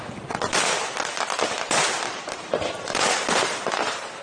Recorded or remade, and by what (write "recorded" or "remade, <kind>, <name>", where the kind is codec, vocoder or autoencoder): recorded